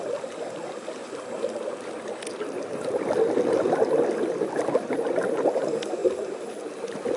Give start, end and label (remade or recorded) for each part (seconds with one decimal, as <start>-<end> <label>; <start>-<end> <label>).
0.0-7.2 recorded